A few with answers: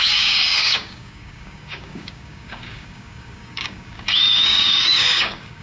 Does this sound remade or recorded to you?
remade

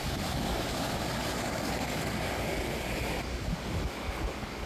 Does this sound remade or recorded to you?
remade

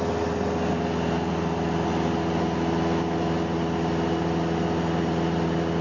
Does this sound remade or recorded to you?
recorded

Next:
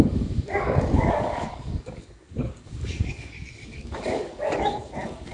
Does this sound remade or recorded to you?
remade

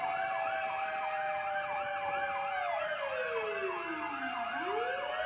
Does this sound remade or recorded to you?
recorded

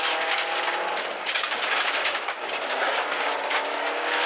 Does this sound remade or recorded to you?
remade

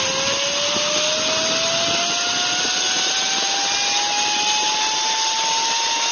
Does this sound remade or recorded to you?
recorded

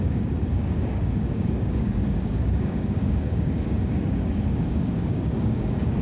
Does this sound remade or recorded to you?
remade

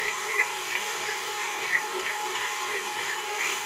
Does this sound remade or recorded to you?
remade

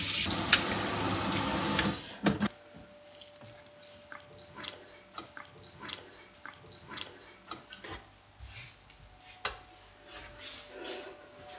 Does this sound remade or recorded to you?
recorded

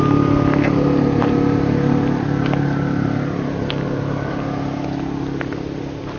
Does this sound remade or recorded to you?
recorded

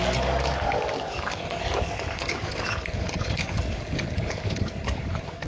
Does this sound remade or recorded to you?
remade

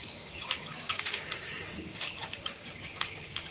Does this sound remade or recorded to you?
remade